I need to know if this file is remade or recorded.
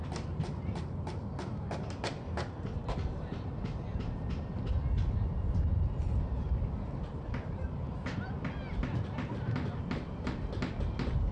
recorded